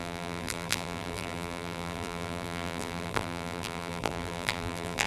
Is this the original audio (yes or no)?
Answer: no